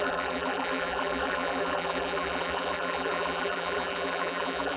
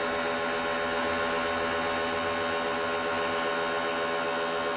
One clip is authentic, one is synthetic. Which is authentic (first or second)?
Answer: second